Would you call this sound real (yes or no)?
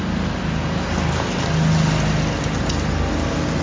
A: yes